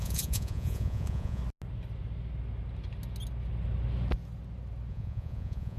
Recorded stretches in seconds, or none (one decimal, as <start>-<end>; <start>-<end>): 1.4-4.9